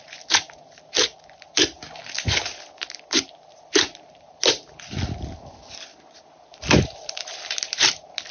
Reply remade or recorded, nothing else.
recorded